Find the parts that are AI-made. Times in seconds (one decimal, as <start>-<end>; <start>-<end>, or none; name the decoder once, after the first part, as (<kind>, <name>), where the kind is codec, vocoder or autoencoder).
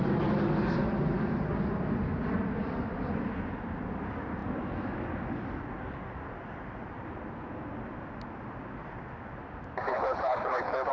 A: 9.9-10.9 (codec, HILCodec)